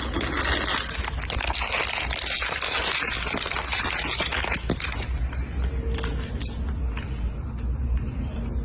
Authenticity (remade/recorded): recorded